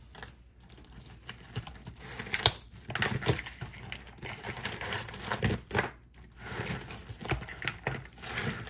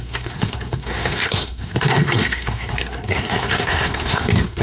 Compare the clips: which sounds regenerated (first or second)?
second